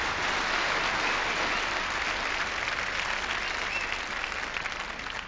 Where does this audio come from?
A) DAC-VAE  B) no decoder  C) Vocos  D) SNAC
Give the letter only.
B